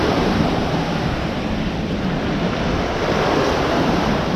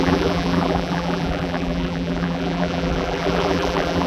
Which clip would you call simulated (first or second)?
second